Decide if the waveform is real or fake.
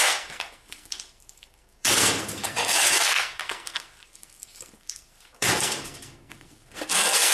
fake